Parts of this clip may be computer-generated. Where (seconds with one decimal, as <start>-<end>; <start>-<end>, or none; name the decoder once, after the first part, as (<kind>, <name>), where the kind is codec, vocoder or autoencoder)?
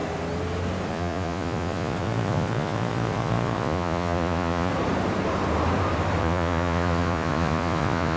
0.9-4.7 (vocoder, Vocos); 6.2-8.2